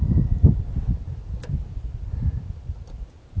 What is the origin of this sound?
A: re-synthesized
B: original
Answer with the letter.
B